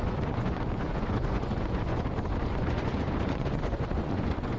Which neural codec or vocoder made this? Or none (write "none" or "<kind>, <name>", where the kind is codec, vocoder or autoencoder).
vocoder, Vocos